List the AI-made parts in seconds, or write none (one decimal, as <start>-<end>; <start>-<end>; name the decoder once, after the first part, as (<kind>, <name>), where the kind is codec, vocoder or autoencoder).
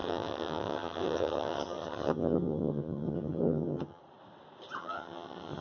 0.0-4.0 (vocoder, HiFi-GAN); 4.8-5.6